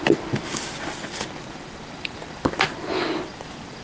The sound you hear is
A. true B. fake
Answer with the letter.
A